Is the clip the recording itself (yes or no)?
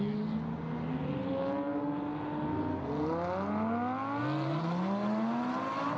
yes